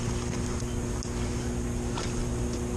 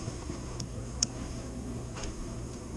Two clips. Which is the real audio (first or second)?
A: first